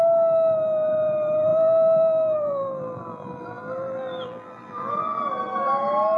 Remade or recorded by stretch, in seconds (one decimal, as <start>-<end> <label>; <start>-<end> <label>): 0.0-1.5 recorded; 1.5-5.2 remade; 5.2-6.2 recorded